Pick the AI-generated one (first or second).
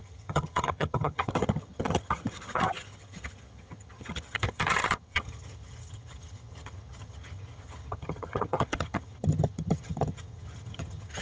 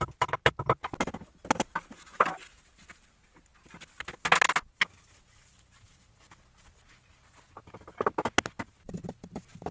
first